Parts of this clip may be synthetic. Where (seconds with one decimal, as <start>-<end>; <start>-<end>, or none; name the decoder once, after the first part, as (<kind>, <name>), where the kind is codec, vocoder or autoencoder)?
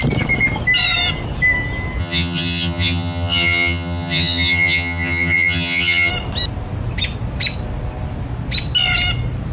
2.0-6.1 (vocoder, HiFi-GAN)